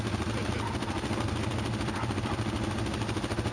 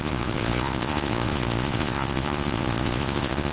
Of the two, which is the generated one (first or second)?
second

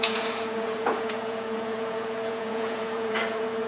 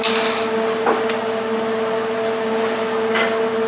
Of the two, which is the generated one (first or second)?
first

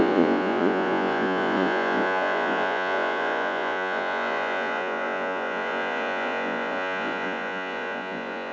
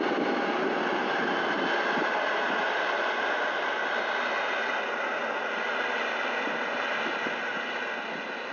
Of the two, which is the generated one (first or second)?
first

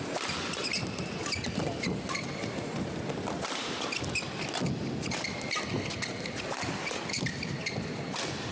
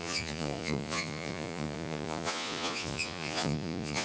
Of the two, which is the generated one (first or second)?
second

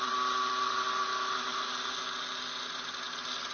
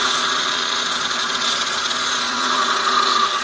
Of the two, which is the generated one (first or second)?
second